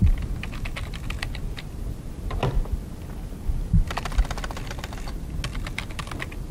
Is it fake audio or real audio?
real